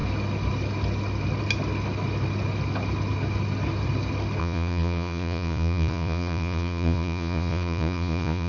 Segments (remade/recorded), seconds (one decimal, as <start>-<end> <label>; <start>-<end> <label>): 0.0-4.4 recorded; 4.4-8.5 remade